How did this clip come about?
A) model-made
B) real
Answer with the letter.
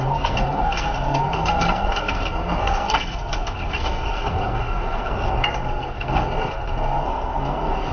A